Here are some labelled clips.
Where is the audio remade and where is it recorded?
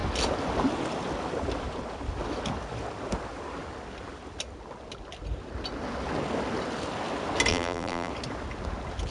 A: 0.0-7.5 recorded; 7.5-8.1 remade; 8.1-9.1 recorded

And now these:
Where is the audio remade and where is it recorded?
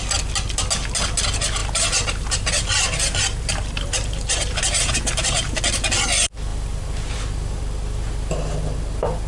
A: 0.0-1.6 recorded; 1.6-5.6 remade; 5.6-6.5 recorded; 6.5-7.6 remade; 7.6-9.3 recorded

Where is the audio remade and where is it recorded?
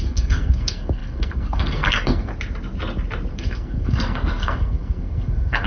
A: 0.0-2.3 remade; 2.3-3.3 recorded; 3.3-5.7 remade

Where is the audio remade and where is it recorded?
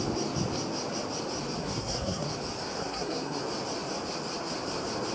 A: 0.0-1.6 recorded; 1.6-2.3 remade; 2.3-2.8 recorded; 2.8-3.4 remade; 3.4-5.1 recorded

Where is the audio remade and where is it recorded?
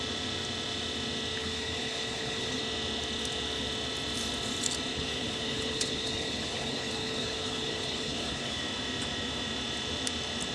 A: 0.0-1.4 recorded; 1.4-2.6 remade; 2.6-4.9 recorded; 4.9-8.6 remade; 8.6-10.5 recorded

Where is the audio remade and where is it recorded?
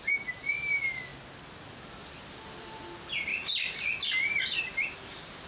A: 0.0-5.5 recorded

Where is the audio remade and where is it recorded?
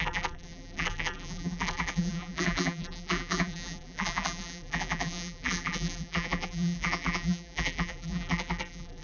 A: 0.0-9.0 remade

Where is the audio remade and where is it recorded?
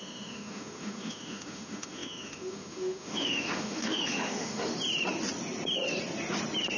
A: 0.0-4.7 remade; 4.7-6.8 recorded